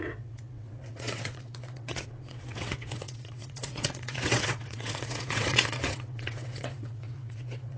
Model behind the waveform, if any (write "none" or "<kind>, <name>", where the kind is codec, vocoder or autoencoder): vocoder, WaveNeXt